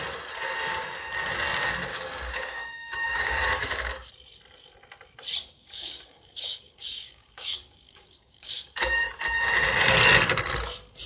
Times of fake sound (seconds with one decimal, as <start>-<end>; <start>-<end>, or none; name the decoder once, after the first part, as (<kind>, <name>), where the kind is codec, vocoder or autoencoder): 1.9-4.1 (codec, DAC); 5.4-9.2